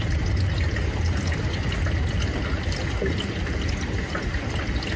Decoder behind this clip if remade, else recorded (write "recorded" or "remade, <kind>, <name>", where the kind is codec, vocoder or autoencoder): recorded